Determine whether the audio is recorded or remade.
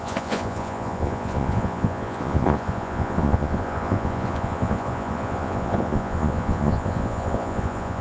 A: remade